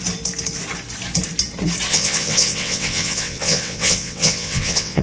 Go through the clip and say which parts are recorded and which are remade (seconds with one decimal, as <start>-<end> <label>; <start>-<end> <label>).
0.0-1.9 recorded; 1.9-5.0 remade